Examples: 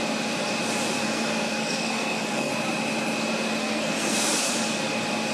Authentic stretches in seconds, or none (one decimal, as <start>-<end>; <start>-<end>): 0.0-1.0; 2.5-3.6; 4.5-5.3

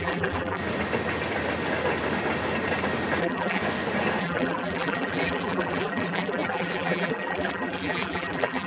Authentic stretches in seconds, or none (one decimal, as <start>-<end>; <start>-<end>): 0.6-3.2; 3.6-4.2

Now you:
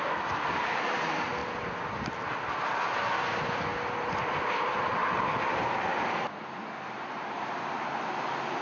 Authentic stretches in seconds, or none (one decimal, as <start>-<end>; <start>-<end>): 0.0-8.6

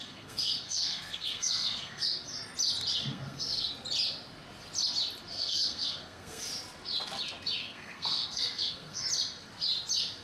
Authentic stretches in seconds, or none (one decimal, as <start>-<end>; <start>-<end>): 2.2-3.0; 3.7-5.3; 6.4-7.6; 9.0-10.2

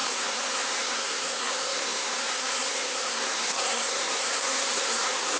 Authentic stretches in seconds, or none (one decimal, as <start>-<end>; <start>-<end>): none

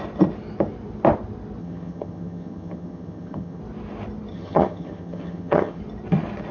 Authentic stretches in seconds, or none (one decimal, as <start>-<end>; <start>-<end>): 0.0-1.6; 3.6-4.3; 5.8-6.5

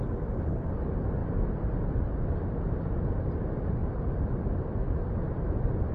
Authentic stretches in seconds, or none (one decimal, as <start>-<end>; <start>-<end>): 0.0-3.8; 5.5-5.9